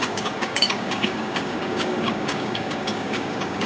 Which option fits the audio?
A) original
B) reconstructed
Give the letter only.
B